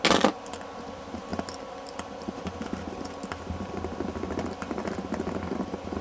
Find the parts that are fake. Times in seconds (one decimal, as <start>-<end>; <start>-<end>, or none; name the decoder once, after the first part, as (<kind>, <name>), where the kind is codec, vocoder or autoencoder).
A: none